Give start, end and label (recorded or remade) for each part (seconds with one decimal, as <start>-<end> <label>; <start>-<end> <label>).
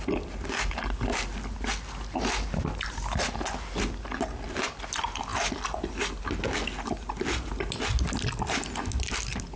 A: 0.0-9.6 recorded